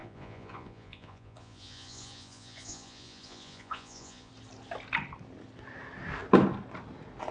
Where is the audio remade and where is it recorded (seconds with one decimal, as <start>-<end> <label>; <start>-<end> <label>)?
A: 0.0-4.3 remade; 4.3-7.3 recorded